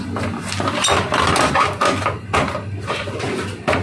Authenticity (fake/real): real